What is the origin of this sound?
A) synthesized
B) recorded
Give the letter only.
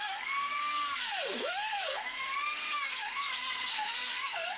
A